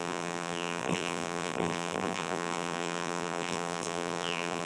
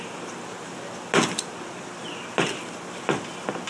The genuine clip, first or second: second